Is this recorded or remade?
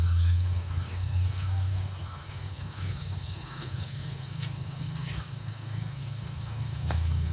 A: remade